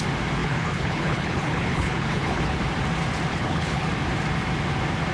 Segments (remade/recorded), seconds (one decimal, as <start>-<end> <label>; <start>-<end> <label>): 0.0-0.4 recorded; 0.4-2.6 remade; 2.6-3.3 recorded; 3.3-3.9 remade; 3.9-5.1 recorded